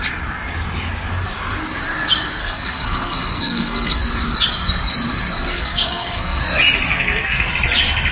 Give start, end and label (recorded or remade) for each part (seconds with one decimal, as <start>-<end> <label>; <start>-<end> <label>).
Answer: 0.0-2.4 recorded; 2.4-4.0 remade; 4.0-5.5 recorded; 5.5-6.4 remade; 6.4-6.9 recorded; 6.9-7.5 remade; 7.5-8.1 recorded